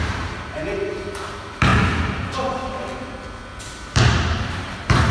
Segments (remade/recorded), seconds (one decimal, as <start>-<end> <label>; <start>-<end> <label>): 0.0-1.7 remade; 1.7-2.2 recorded; 2.2-2.6 remade; 2.6-3.6 recorded; 3.6-5.1 remade